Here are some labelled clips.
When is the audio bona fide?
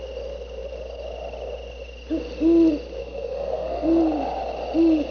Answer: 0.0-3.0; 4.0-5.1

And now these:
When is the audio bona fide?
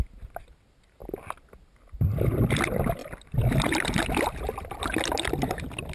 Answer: 0.0-5.9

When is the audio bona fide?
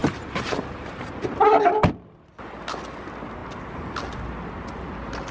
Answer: 0.0-5.3